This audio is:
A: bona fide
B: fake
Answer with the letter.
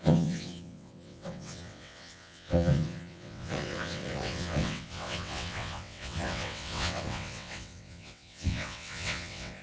B